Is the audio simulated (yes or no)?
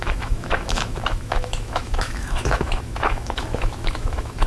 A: yes